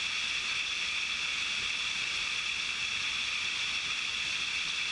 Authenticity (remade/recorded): recorded